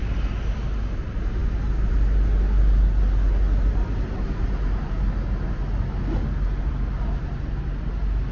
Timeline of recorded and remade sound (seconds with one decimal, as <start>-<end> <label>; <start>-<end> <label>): 0.0-8.3 recorded

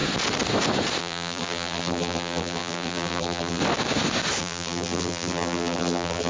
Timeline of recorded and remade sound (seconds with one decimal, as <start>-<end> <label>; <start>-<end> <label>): 0.0-1.0 recorded; 1.0-3.6 remade; 3.6-4.4 recorded; 4.4-6.3 remade

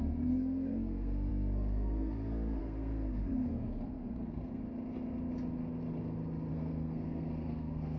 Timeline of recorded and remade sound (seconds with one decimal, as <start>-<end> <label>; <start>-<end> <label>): 0.0-4.6 remade; 4.6-6.5 recorded; 6.5-8.0 remade

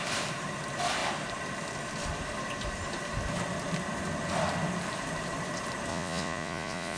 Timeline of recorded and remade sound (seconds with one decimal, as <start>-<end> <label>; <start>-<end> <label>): 0.0-5.9 recorded; 5.9-7.0 remade